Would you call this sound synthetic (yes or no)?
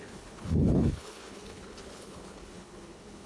yes